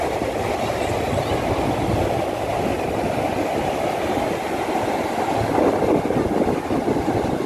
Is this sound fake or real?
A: real